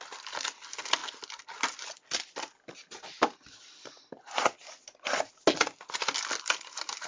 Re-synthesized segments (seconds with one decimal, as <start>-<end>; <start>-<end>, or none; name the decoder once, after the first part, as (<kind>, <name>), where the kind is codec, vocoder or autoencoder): none